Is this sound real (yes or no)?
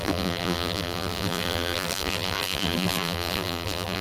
no